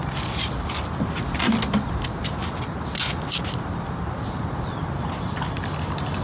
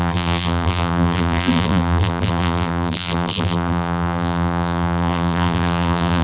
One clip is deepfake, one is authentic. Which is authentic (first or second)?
first